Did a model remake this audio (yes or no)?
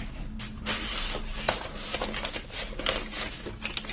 no